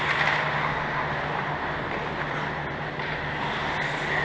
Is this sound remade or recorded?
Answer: recorded